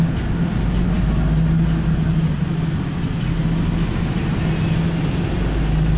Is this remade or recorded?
recorded